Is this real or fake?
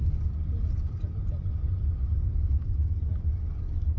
real